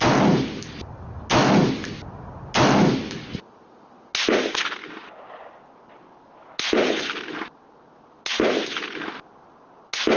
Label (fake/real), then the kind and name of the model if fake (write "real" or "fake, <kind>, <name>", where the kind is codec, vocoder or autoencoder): real